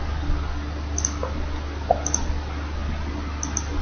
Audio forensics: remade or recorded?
recorded